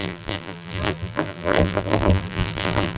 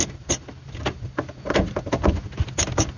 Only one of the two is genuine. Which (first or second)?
second